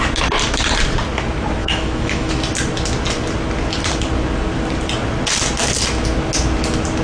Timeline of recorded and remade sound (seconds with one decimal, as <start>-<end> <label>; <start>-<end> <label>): 0.0-1.6 recorded; 1.6-2.3 remade; 2.3-7.0 recorded